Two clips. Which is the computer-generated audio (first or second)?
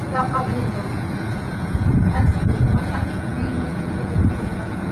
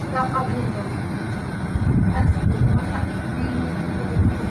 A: first